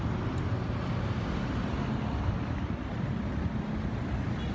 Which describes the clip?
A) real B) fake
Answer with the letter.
A